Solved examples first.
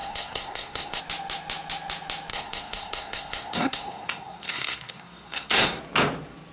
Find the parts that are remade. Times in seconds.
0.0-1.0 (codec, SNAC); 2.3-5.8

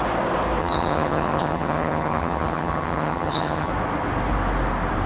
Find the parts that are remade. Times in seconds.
0.6-3.7 (vocoder, HiFi-GAN)

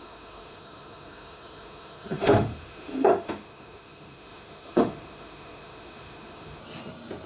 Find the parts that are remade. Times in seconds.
0.0-6.6 (autoencoder, DAC-VAE)